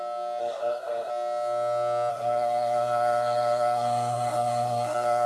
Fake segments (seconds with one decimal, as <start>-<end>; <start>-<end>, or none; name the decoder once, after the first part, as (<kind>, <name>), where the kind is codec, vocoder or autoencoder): 0.4-1.1 (codec, SNAC); 2.1-5.3